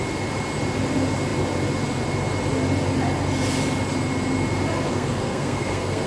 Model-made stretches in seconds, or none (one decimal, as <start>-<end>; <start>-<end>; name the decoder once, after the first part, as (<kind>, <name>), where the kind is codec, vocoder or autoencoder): 4.9-6.1 (codec, SNAC)